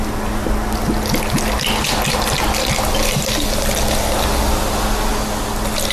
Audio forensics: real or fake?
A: real